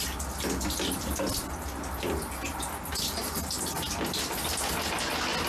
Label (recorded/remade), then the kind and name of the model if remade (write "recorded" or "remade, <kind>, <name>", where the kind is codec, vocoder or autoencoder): recorded